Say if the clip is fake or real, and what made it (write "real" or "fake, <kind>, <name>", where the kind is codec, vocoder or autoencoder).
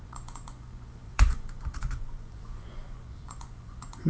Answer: fake, vocoder, Vocos